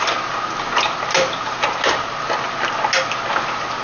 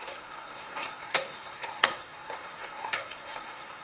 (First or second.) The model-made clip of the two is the second